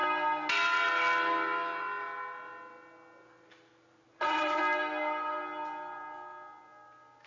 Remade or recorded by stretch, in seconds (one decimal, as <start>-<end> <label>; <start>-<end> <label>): 0.0-4.1 recorded; 4.1-4.6 remade; 4.6-7.3 recorded